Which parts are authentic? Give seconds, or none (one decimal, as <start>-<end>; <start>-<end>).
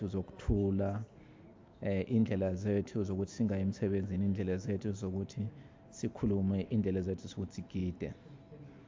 0.0-1.6; 4.9-8.9